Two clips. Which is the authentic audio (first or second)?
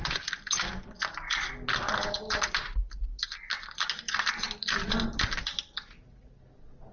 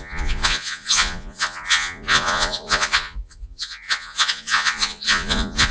first